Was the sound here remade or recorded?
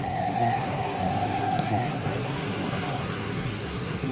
remade